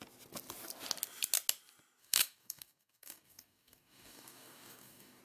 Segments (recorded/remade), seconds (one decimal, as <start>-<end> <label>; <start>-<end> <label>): 0.0-2.0 recorded; 2.0-5.2 remade